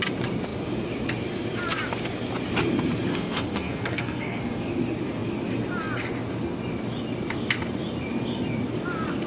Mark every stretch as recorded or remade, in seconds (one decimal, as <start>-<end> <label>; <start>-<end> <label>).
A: 0.0-3.1 recorded; 3.1-4.4 remade; 4.4-9.3 recorded